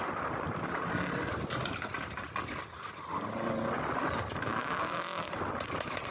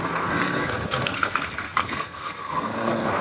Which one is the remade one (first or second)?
second